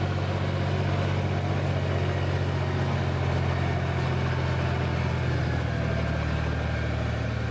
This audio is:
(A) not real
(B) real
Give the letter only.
B